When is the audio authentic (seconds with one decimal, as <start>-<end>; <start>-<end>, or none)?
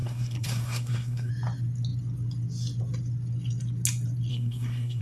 1.3-4.3